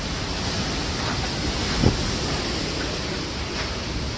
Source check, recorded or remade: recorded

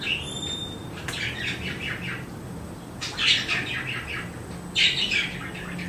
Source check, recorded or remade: recorded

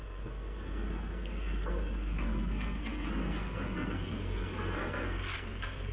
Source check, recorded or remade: remade